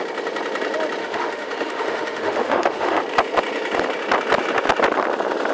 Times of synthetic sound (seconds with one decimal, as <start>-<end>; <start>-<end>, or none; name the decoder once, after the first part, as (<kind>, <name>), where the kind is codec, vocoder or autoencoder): 1.0-3.0 (autoencoder, DAC-VAE)